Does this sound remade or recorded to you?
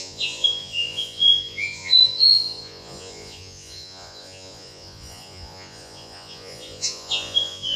remade